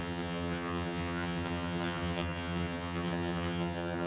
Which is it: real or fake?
fake